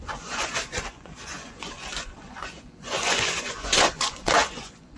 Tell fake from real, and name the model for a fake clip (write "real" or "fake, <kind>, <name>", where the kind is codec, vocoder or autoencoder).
fake, vocoder, Vocos